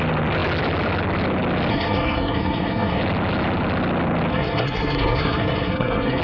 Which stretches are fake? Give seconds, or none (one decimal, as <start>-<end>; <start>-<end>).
1.7-3.0; 4.3-6.2